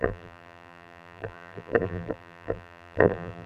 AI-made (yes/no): yes